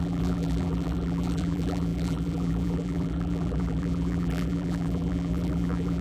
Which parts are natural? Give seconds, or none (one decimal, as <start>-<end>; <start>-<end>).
none